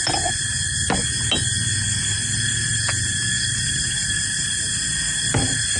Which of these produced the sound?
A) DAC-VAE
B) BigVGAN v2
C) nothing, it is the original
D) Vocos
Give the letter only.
C